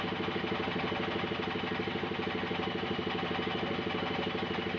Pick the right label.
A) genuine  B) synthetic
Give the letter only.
A